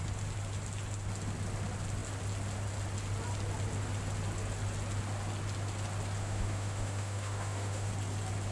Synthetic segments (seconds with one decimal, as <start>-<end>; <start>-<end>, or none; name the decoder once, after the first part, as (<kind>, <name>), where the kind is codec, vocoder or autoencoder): 6.2-7.9 (autoencoder, DAC-VAE)